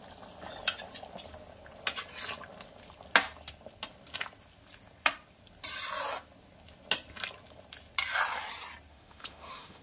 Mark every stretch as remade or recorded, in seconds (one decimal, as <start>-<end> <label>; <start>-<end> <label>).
0.0-8.9 recorded; 8.9-9.8 remade